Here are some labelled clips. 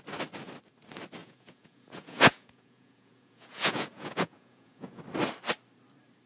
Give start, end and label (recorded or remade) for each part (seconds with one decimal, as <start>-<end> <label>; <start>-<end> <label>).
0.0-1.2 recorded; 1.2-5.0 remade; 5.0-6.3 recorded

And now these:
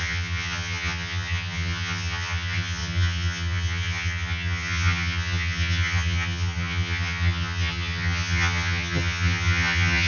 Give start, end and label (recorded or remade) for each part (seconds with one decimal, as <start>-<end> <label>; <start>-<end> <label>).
0.0-10.1 remade

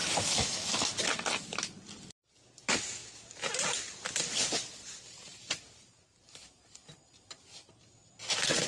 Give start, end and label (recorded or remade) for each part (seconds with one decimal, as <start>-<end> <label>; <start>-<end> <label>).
0.0-0.9 remade; 0.9-8.7 recorded

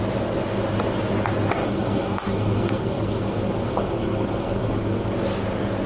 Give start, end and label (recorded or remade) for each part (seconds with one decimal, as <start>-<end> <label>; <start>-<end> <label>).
0.0-1.6 recorded; 1.6-5.1 remade; 5.1-5.9 recorded

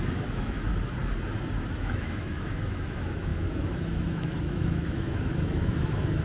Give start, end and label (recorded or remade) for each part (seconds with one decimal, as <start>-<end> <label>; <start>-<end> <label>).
0.0-0.7 remade; 0.7-1.6 recorded; 1.6-6.2 remade

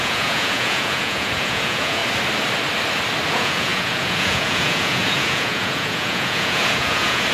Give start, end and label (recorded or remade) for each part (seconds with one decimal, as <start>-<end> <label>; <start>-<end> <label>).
0.0-2.0 remade; 2.0-3.3 recorded; 3.3-7.3 remade